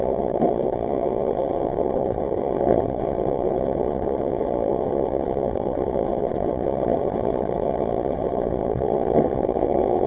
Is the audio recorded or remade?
remade